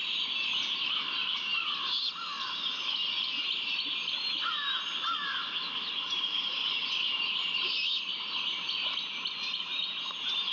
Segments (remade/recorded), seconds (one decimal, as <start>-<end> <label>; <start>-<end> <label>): 0.0-10.5 remade